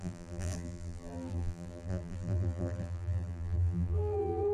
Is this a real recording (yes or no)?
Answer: no